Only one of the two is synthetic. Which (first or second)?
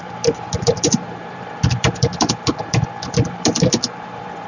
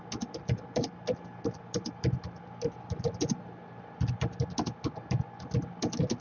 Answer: first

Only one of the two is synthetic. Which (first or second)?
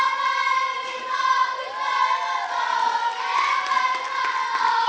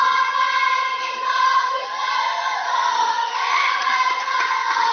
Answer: second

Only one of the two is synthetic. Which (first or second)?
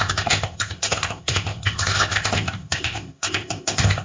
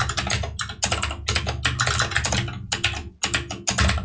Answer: first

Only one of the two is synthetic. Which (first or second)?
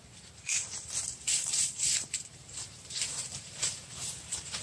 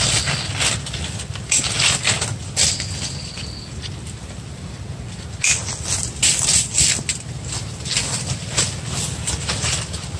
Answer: first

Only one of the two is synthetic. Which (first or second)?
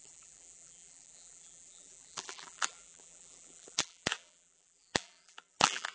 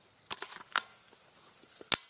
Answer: first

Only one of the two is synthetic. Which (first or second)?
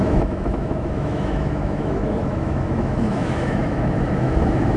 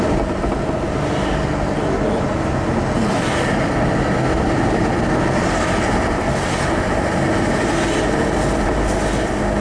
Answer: first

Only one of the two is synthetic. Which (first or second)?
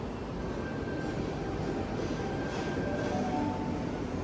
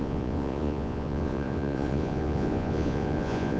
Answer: second